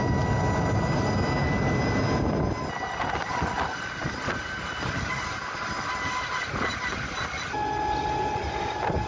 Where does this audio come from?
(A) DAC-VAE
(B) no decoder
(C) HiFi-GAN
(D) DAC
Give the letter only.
B